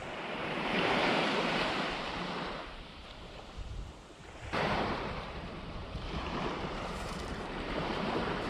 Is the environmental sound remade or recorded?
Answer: remade